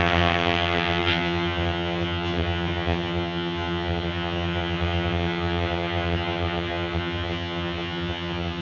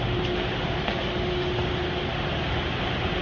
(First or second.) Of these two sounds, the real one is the second